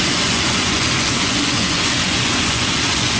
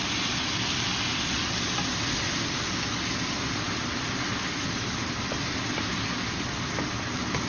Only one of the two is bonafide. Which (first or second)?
second